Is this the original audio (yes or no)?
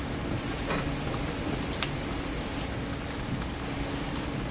yes